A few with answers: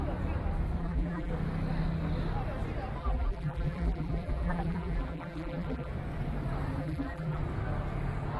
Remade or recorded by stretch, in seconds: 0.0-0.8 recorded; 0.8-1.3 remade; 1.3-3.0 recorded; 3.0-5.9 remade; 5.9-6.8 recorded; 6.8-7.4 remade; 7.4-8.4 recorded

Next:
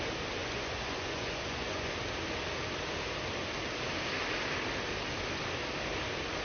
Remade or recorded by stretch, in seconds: 0.0-0.4 recorded; 0.4-1.9 remade; 1.9-6.4 recorded

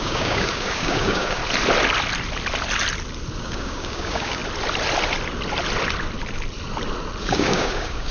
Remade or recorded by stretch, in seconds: 0.0-1.4 remade; 1.4-3.4 recorded; 3.4-4.4 remade; 4.4-7.2 recorded; 7.2-8.1 remade

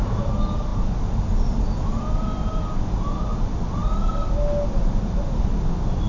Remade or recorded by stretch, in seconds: 0.0-6.1 recorded